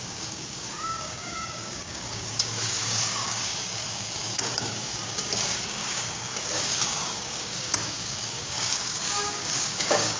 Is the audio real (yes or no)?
no